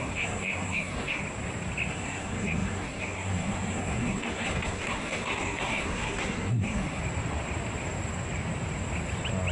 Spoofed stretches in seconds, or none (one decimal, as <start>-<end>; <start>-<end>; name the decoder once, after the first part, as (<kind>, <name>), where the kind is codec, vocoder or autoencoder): 0.0-1.2 (codec, SNAC); 1.9-7.0